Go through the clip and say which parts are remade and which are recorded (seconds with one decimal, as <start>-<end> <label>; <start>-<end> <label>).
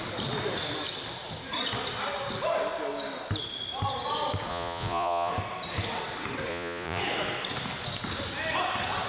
0.0-4.5 recorded; 4.5-5.3 remade; 5.3-6.5 recorded; 6.5-7.0 remade; 7.0-9.1 recorded